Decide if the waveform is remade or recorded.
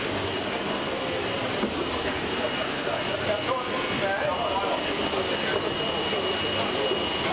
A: recorded